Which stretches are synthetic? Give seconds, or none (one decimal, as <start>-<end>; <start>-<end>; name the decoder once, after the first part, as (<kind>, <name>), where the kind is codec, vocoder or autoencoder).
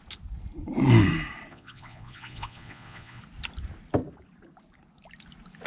1.5-3.2 (vocoder, Vocos)